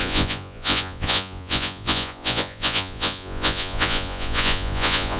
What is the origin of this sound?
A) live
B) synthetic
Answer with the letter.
B